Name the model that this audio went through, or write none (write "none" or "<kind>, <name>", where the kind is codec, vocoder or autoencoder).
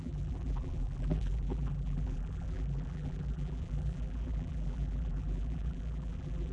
vocoder, BigVGAN v2